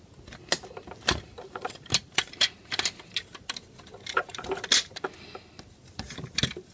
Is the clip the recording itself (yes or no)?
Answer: yes